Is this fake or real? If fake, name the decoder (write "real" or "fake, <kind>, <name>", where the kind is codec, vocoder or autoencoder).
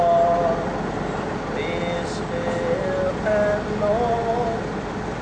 real